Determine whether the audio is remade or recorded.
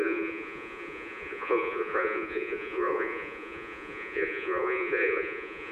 remade